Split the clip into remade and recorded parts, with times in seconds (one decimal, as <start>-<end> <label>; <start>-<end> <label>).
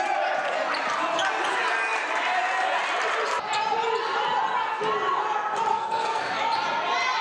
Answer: 0.0-5.7 recorded; 5.7-6.4 remade; 6.4-7.2 recorded